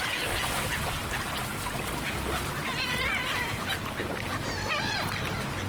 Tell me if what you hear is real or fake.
real